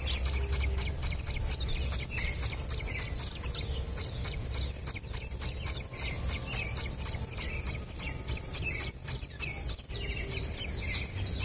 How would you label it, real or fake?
real